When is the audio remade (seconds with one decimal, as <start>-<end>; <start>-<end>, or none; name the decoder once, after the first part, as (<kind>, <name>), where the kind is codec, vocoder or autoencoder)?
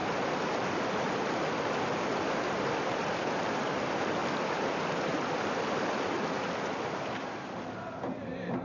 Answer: 1.7-8.6 (vocoder, BigVGAN v2)